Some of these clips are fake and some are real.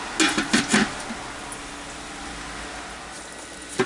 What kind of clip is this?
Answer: real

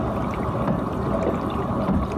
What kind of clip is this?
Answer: fake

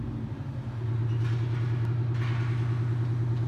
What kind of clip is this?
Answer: real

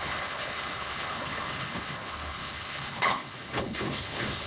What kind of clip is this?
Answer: fake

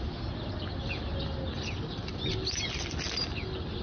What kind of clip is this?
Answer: real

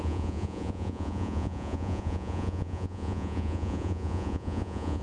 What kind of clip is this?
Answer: fake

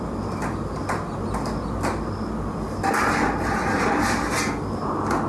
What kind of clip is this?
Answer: real